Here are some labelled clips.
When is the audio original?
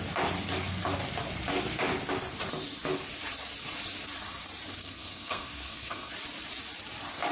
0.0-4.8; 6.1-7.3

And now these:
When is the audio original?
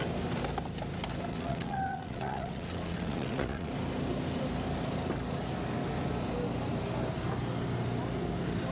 0.0-1.3; 3.7-8.7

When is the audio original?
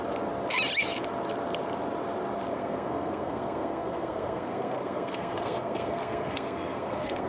0.0-2.5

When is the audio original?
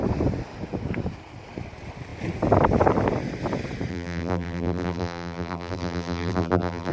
0.0-3.9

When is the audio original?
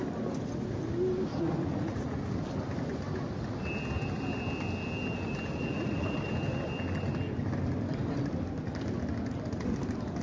0.0-1.3; 2.3-5.6; 6.3-10.2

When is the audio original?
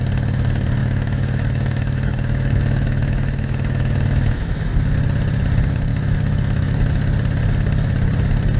0.0-0.8; 4.7-5.9; 6.9-8.6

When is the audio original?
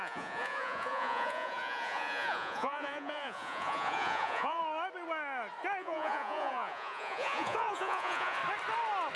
4.6-5.8; 8.4-9.2